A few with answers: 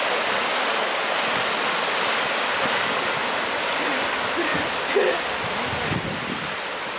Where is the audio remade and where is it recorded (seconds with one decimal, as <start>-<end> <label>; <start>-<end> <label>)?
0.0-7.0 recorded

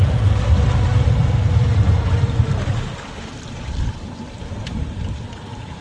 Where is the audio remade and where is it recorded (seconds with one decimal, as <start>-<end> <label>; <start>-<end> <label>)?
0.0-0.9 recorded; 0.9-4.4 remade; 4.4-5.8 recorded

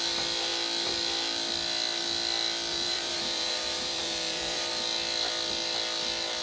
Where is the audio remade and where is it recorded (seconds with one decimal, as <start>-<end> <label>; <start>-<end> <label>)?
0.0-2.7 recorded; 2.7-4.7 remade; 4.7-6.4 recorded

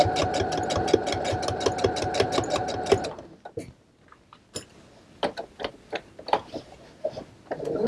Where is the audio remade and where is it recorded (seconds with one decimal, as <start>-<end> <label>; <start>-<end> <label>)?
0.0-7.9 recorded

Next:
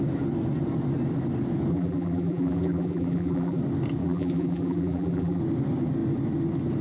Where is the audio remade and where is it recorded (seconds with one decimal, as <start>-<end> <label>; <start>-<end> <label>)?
0.0-1.7 recorded; 1.7-3.6 remade; 3.6-4.0 recorded; 4.0-5.4 remade; 5.4-6.8 recorded

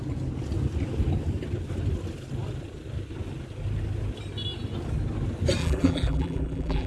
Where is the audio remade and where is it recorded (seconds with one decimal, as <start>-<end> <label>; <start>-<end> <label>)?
0.0-5.6 recorded; 5.6-6.9 remade